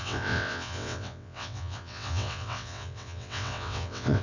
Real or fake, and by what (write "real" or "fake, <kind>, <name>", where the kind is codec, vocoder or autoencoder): fake, vocoder, WaveNeXt